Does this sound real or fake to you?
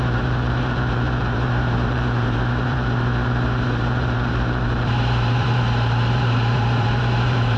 fake